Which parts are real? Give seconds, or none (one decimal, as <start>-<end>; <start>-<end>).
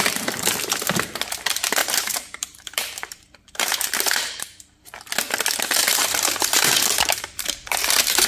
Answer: 0.0-1.8; 5.0-5.8